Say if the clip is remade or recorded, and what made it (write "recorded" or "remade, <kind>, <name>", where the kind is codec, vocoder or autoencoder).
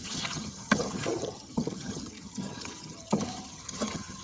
remade, vocoder, HiFi-GAN